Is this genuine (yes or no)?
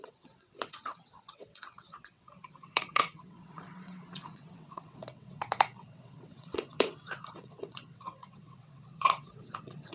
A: no